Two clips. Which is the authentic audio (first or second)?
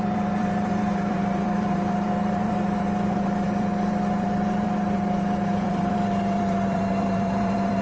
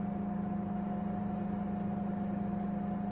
second